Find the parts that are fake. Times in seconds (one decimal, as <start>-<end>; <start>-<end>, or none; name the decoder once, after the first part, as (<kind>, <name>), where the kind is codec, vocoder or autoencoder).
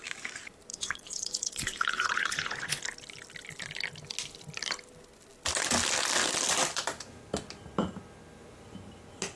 0.7-2.8 (vocoder, Vocos)